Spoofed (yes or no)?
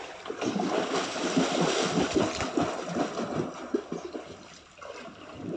no